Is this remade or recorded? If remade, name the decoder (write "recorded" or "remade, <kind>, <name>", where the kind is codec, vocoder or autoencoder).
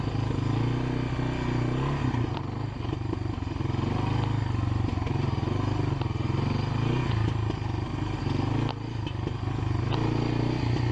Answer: recorded